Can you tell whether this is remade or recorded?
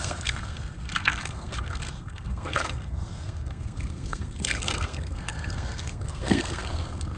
remade